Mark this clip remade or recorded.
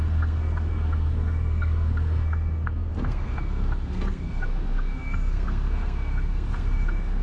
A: remade